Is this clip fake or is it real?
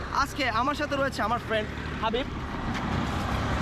fake